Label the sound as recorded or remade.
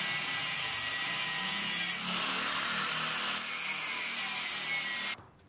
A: recorded